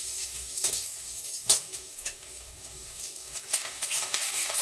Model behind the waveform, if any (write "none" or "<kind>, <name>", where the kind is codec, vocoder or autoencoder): codec, DAC